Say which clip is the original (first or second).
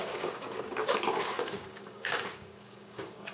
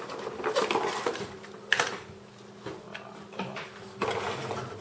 second